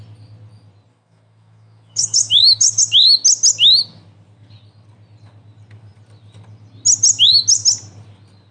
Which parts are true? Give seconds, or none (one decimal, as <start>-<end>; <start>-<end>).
0.0-0.9; 2.8-8.5